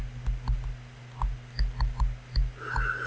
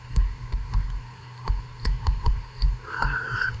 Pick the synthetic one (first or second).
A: second